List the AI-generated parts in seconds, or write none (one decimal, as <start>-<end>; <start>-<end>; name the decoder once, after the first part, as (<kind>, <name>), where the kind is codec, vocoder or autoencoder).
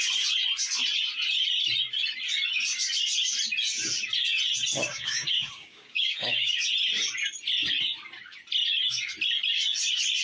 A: 4.9-6.6 (codec, DAC)